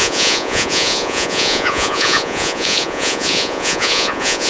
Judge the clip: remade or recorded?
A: remade